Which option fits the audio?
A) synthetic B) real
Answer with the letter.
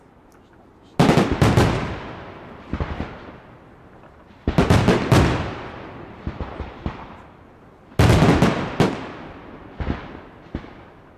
B